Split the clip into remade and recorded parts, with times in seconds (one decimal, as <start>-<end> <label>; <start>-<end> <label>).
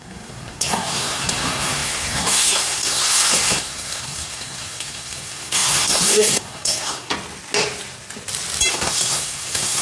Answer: 0.0-7.1 remade; 7.1-8.7 recorded; 8.7-9.8 remade